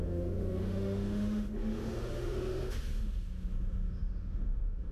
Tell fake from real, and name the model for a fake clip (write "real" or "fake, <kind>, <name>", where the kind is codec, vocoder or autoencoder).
fake, autoencoder, DAC-VAE